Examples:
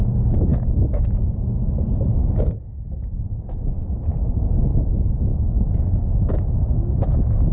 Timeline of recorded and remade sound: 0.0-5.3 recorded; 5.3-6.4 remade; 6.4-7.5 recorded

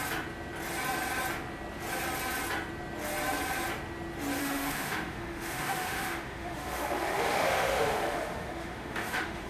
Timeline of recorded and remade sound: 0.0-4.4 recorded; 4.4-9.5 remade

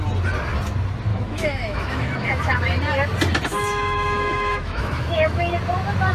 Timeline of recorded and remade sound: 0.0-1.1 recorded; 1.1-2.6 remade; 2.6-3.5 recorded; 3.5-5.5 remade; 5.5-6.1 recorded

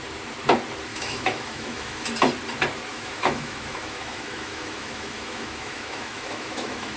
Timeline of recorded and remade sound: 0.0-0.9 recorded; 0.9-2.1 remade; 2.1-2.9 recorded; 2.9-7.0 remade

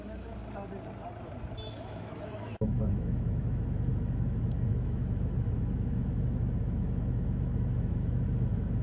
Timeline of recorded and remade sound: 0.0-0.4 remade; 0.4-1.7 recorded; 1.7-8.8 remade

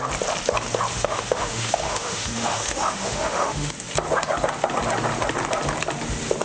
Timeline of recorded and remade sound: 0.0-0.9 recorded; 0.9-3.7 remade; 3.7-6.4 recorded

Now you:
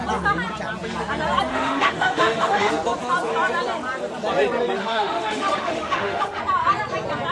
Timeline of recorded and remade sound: 0.0-1.5 recorded; 1.5-2.7 remade; 2.7-4.8 recorded; 4.8-6.4 remade; 6.4-7.3 recorded

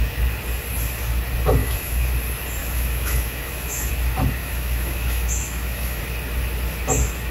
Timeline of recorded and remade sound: 0.0-1.6 recorded; 1.6-2.1 remade; 2.1-2.6 recorded; 2.6-3.9 remade; 3.9-4.4 recorded; 4.4-6.0 remade; 6.0-7.3 recorded